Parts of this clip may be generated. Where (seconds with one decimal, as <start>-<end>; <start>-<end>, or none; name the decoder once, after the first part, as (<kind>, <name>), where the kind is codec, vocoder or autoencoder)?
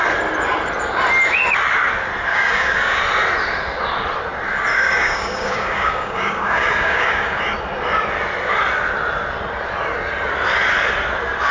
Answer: 2.3-3.0 (codec, DAC); 4.7-7.4